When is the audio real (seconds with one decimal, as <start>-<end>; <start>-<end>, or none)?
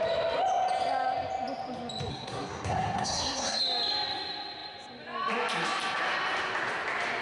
0.0-2.1; 3.6-7.2